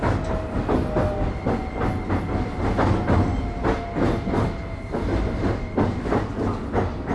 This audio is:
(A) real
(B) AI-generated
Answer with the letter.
A